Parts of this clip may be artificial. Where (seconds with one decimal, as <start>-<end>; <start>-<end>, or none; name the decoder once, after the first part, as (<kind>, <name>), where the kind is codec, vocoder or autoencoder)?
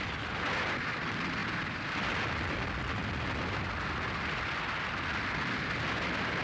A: none